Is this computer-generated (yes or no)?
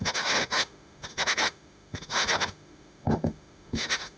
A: yes